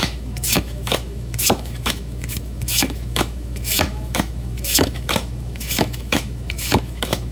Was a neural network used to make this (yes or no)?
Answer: yes